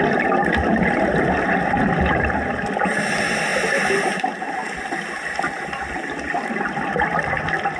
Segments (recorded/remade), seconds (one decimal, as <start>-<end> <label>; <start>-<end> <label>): 0.0-7.8 recorded